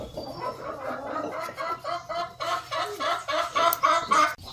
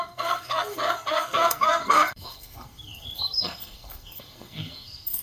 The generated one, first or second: second